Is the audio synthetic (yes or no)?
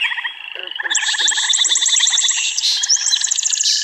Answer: yes